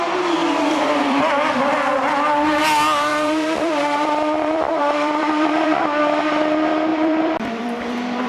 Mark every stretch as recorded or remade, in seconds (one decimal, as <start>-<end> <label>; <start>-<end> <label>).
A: 0.0-0.4 recorded; 0.4-1.7 remade; 1.7-3.1 recorded; 3.1-5.8 remade; 5.8-6.9 recorded; 6.9-8.3 remade